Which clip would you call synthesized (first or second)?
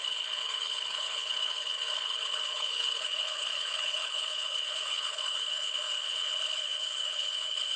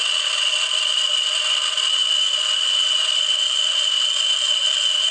first